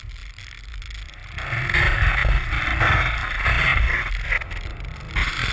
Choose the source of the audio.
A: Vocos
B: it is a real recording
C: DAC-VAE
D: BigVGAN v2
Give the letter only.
B